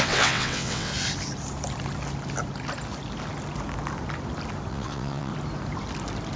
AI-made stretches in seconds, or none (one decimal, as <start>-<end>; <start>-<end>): 0.0-0.9; 4.7-5.3

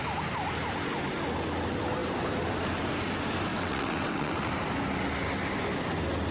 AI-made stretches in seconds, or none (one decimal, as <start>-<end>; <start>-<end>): 3.5-4.5

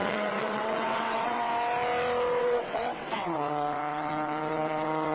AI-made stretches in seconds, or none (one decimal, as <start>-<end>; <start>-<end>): 0.0-1.5; 2.4-5.1

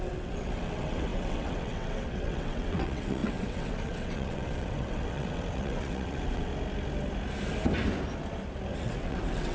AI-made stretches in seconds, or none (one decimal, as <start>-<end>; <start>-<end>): 0.0-6.5; 8.8-9.5

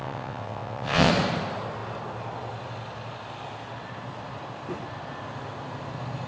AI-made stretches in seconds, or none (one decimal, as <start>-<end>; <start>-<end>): 0.0-1.1